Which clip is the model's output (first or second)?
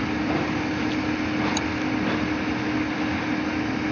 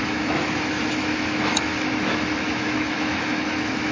second